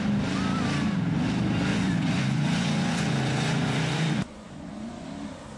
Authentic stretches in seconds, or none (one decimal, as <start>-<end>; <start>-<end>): 0.0-1.7; 5.1-5.6

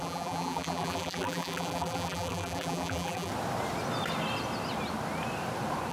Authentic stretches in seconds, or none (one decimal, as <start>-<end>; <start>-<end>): 3.3-5.9

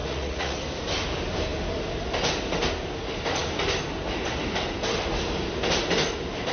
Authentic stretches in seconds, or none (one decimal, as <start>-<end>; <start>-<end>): 0.6-6.5

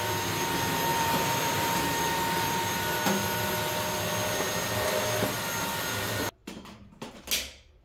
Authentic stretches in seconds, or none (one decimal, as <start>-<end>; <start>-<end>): 0.0-0.9; 2.6-7.8

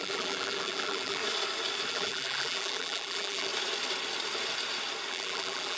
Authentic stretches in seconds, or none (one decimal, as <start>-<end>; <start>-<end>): 1.2-1.9; 3.5-5.1

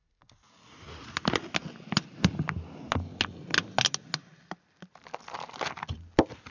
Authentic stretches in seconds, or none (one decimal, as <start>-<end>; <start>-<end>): 0.0-6.5